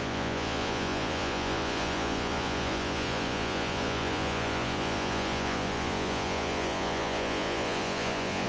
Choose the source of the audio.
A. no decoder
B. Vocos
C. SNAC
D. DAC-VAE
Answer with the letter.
B